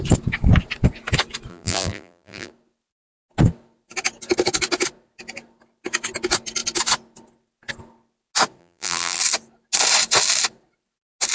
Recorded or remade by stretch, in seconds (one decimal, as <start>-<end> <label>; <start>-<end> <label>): 0.0-1.5 recorded; 1.5-2.5 remade; 2.5-8.6 recorded; 8.6-9.2 remade; 9.2-11.3 recorded